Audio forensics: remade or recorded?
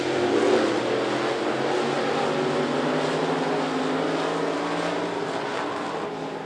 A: recorded